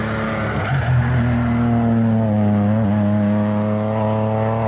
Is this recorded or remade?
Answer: recorded